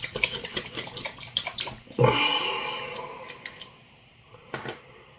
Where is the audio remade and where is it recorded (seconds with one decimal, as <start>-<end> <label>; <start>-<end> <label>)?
0.0-0.5 remade; 0.5-3.6 recorded; 3.6-5.2 remade